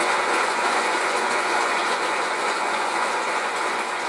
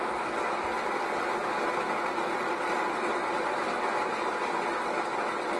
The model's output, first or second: first